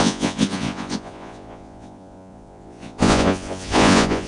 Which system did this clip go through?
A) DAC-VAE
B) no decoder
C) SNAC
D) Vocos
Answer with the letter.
D